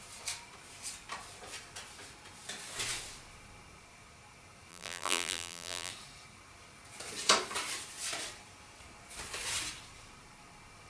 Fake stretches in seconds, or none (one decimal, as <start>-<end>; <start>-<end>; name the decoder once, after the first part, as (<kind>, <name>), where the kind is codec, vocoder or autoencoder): 4.7-5.9 (vocoder, BigVGAN v2)